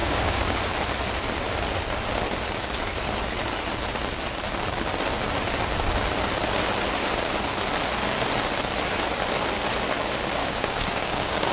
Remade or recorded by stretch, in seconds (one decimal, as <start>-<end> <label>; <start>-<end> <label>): 0.0-0.6 remade; 0.6-10.4 recorded; 10.4-11.5 remade